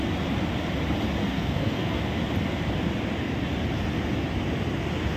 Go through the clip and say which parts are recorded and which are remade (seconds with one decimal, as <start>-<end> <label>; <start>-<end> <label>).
0.0-1.2 recorded; 1.2-2.0 remade; 2.0-5.2 recorded